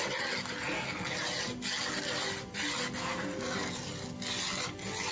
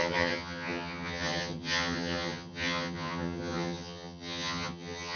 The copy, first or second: second